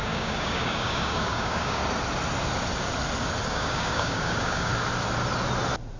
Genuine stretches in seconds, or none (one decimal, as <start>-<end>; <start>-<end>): 1.8-3.5; 4.7-6.0